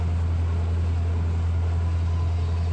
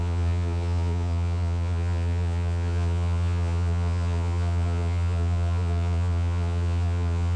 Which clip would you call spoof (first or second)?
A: second